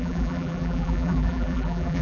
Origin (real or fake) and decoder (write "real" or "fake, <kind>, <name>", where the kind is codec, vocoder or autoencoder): fake, vocoder, BigVGAN v2